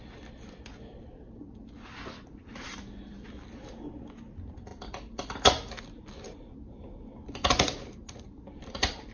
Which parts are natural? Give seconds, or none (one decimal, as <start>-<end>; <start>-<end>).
0.0-9.1